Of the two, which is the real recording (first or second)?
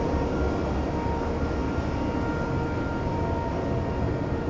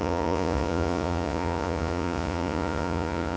first